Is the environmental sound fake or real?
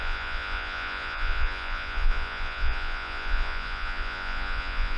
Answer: fake